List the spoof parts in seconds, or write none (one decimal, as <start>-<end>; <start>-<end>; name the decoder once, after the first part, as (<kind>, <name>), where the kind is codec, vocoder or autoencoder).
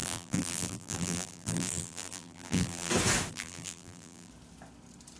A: 0.0-2.9 (vocoder, BigVGAN v2); 3.3-4.3